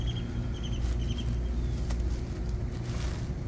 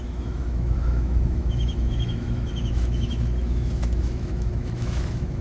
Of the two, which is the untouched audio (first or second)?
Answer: first